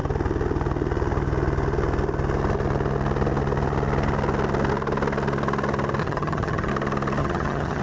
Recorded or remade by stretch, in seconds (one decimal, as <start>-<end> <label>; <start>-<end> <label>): 0.0-6.0 recorded; 6.0-6.7 remade; 6.7-7.2 recorded; 7.2-7.8 remade